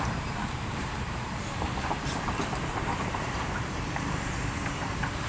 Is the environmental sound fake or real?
fake